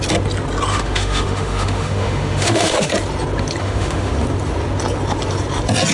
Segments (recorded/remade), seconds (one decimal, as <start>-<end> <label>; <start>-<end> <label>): 0.0-0.7 recorded; 0.7-2.9 remade; 2.9-3.6 recorded; 3.6-4.1 remade; 4.1-5.9 recorded